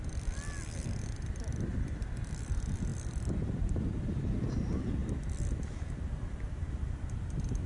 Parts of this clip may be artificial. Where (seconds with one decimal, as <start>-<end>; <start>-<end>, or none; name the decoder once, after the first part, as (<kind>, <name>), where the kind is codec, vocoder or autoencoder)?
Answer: none